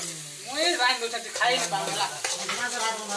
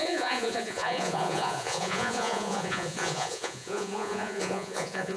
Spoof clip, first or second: second